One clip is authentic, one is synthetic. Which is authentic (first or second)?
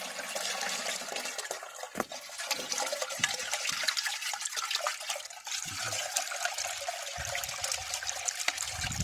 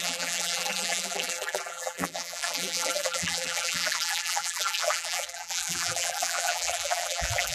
first